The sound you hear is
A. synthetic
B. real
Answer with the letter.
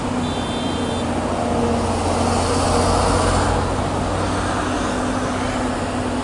B